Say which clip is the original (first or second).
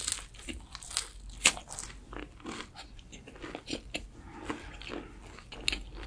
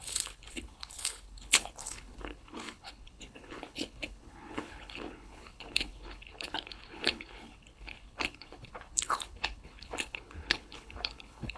first